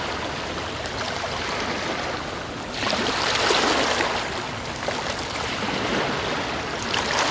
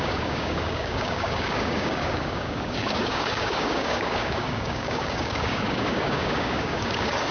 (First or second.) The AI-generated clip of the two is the second